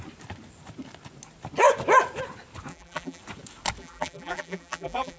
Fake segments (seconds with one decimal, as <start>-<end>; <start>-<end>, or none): 2.7-3.2; 3.8-5.2